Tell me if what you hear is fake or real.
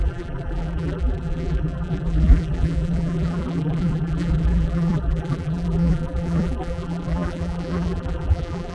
fake